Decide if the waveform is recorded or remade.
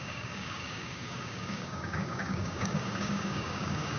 remade